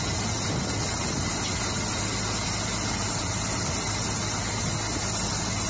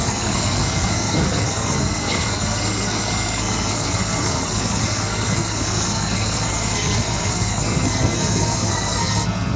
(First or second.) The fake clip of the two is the second